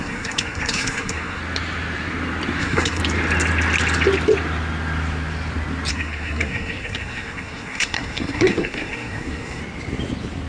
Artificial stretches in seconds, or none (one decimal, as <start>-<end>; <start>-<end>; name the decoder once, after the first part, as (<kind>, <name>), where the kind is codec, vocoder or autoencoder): 0.0-1.4 (codec, SNAC); 2.6-3.0; 5.9-9.6